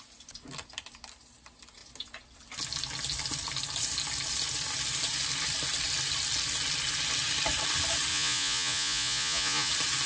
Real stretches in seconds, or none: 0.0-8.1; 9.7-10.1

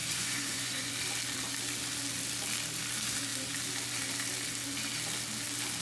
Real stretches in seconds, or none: 0.9-5.8

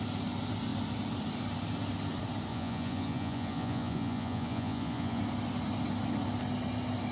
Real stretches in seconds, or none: 0.0-2.5; 5.2-7.1

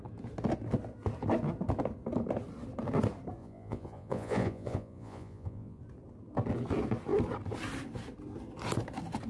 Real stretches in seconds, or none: 0.0-3.4; 5.8-9.3

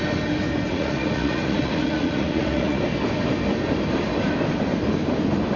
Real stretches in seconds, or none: 0.0-0.7; 2.8-5.6

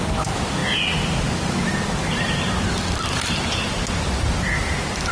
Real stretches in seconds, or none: 0.0-5.1

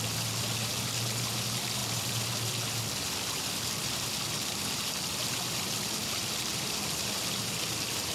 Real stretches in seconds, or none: 0.0-8.1

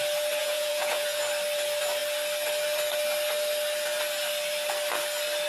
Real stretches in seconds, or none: 0.0-0.4; 1.2-5.5